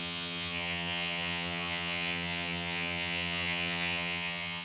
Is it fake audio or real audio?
fake